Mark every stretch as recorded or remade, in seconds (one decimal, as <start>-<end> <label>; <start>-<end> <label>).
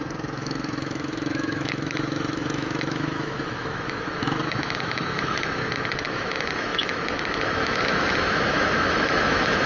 0.0-9.7 remade